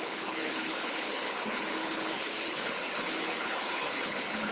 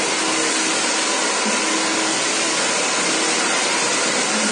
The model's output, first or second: first